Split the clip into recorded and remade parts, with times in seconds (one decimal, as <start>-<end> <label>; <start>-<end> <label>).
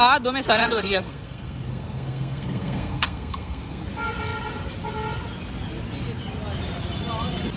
0.0-0.6 recorded; 0.6-3.8 remade; 3.8-7.6 recorded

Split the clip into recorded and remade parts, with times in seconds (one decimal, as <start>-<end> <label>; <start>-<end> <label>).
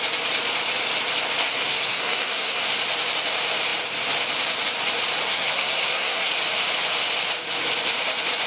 0.0-1.4 recorded; 1.4-2.6 remade; 2.6-5.3 recorded; 5.3-6.3 remade; 6.3-8.5 recorded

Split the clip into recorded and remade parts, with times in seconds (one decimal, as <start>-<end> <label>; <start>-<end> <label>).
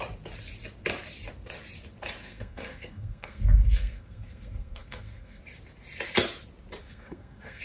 0.0-2.2 recorded; 2.2-5.4 remade; 5.4-6.8 recorded; 6.8-7.6 remade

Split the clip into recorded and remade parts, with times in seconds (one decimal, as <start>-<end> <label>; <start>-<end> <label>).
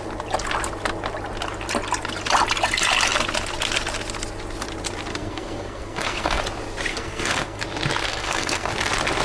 0.0-5.1 recorded; 5.1-6.4 remade; 6.4-6.9 recorded; 6.9-7.6 remade; 7.6-8.1 recorded; 8.1-8.7 remade; 8.7-9.2 recorded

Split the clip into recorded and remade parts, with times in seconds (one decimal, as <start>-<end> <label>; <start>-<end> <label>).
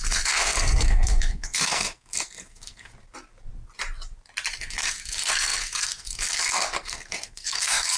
0.0-2.9 remade; 2.9-4.6 recorded; 4.6-8.0 remade